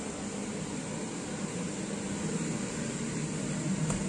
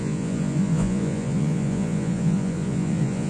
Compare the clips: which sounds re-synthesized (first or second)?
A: second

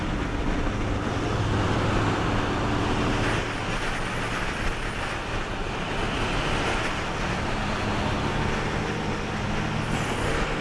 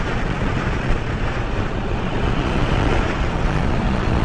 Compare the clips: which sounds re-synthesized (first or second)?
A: second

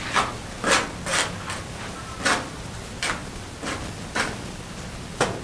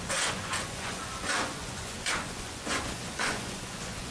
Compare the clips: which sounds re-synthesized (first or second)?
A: second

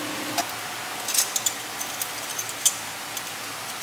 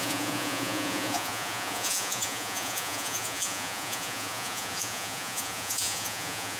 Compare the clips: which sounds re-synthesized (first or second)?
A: second